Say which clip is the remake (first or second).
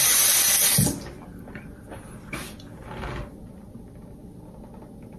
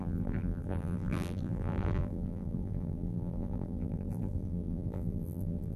second